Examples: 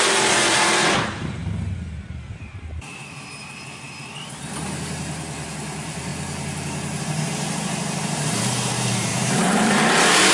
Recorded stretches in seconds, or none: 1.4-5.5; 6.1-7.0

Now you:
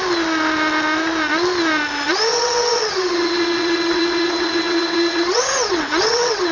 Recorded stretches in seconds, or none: 0.0-2.3

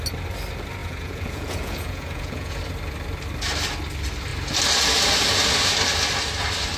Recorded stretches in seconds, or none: 0.0-0.8; 2.6-6.8

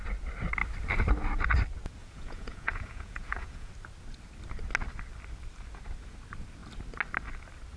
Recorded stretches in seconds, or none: 0.0-2.0; 3.7-7.8

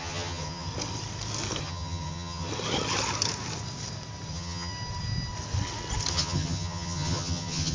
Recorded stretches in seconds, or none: 0.7-1.6; 2.5-4.3; 4.7-6.1

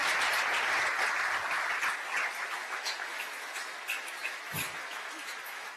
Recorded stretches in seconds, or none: 0.0-2.6